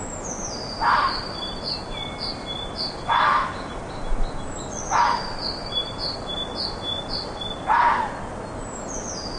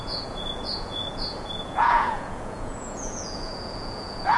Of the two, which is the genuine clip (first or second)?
first